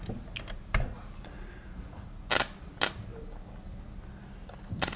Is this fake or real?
real